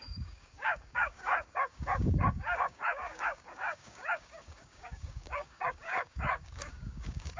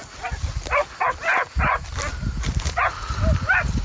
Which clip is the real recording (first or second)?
second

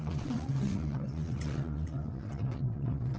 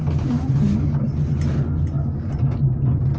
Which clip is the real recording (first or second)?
second